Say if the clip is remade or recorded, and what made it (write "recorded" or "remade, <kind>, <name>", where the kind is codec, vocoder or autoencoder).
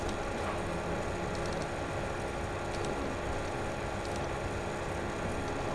recorded